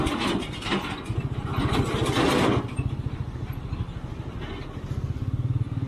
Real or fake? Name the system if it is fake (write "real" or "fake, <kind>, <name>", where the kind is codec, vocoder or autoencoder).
real